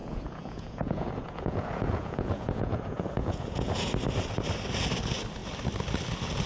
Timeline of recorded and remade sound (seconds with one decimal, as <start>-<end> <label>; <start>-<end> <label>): 0.0-3.9 remade; 3.9-6.5 recorded